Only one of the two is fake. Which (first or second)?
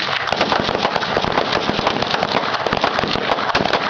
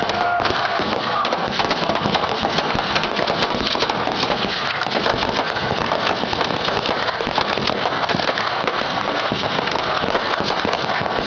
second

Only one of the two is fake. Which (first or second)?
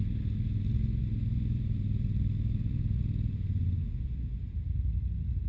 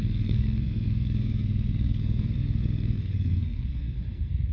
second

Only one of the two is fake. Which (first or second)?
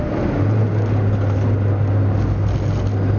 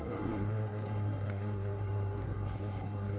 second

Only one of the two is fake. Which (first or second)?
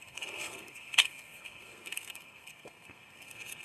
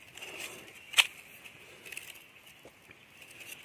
first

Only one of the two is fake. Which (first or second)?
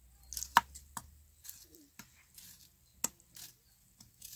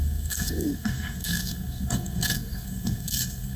second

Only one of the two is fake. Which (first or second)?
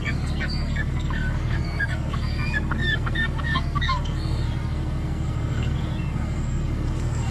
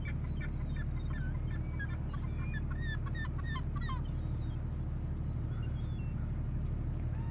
first